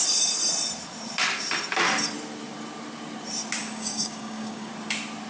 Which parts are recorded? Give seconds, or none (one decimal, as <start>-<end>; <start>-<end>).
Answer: 0.0-3.6; 4.7-5.3